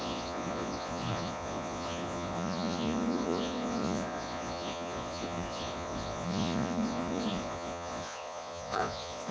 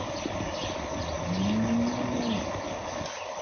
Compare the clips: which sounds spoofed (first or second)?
first